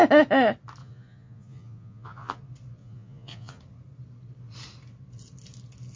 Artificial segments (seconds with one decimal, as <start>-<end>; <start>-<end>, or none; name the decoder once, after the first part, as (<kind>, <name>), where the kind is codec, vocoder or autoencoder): 0.8-2.4 (vocoder, Vocos); 2.8-3.6